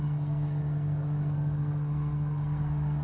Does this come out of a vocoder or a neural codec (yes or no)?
yes